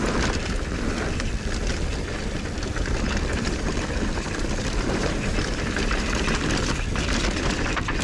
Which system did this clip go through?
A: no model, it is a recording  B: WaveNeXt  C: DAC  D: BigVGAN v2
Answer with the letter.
D